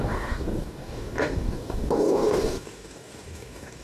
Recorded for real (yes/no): no